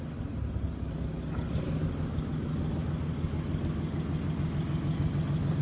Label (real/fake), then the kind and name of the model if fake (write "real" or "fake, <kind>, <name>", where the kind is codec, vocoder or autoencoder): real